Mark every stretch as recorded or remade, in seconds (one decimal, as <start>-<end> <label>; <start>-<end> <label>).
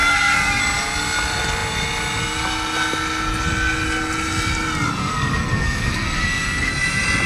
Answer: 0.0-0.6 remade; 0.6-5.0 recorded; 5.0-6.7 remade; 6.7-7.3 recorded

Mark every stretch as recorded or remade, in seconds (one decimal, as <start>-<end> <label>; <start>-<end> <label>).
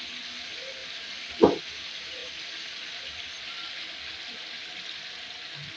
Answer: 0.0-0.8 recorded; 0.8-1.6 remade; 1.6-5.8 recorded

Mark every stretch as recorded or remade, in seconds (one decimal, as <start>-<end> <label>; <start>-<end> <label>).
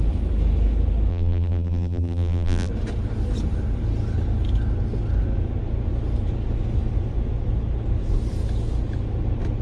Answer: 0.0-1.1 recorded; 1.1-2.7 remade; 2.7-9.6 recorded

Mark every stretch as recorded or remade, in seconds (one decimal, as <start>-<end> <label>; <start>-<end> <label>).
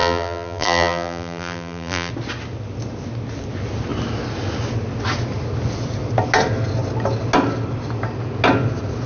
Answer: 0.0-2.1 remade; 2.1-9.1 recorded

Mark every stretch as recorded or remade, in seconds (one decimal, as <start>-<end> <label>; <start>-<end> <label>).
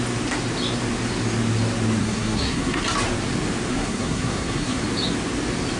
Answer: 0.0-2.0 recorded; 2.0-2.8 remade; 2.8-3.7 recorded; 3.7-4.8 remade; 4.8-5.8 recorded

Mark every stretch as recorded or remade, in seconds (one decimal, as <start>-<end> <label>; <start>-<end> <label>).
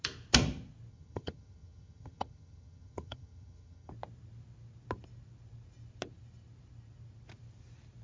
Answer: 0.0-0.9 recorded; 0.9-3.9 remade; 3.9-8.0 recorded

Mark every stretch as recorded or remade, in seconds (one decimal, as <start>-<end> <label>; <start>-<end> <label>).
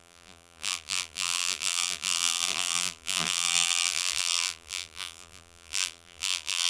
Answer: 0.0-6.7 remade